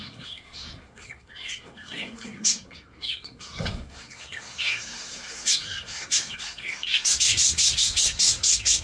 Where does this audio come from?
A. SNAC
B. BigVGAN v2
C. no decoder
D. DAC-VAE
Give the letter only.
A